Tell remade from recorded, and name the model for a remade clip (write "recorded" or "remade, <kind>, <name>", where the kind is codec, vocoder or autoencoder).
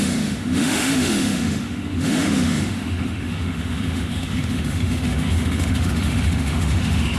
remade, autoencoder, DAC-VAE